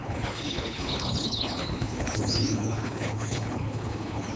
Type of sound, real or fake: fake